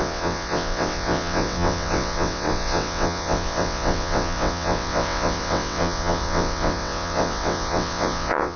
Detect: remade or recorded remade